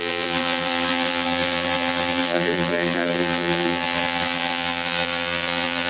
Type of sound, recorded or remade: remade